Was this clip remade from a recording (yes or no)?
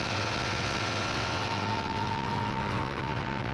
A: yes